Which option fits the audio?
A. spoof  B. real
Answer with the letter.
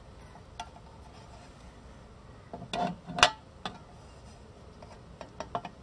B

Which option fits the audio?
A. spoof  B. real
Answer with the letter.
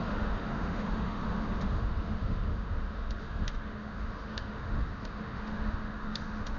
A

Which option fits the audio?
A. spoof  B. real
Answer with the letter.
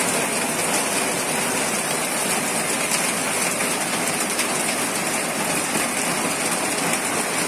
B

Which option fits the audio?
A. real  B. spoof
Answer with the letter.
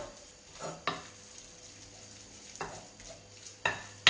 A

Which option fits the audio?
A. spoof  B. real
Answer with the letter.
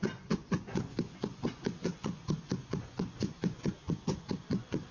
A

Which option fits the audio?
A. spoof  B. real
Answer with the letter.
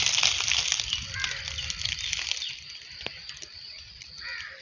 B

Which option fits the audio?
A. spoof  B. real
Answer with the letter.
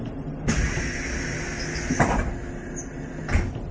B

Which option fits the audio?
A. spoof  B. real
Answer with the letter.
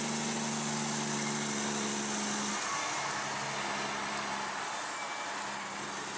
B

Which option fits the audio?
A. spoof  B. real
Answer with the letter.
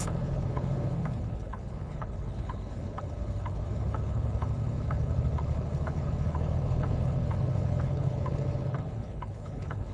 A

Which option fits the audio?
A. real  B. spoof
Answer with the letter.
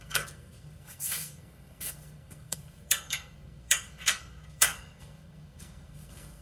B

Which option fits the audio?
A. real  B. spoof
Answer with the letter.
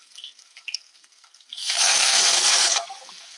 B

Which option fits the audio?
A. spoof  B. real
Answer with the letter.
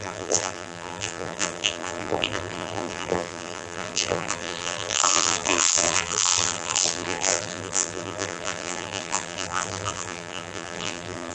A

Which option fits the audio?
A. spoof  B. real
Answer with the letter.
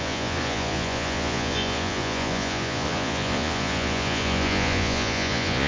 A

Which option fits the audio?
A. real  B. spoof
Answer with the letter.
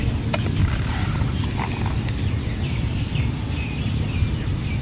A